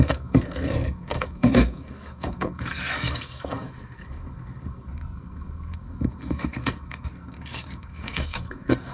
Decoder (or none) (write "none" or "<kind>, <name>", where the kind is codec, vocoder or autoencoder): codec, SNAC